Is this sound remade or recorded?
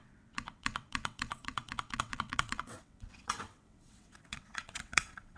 remade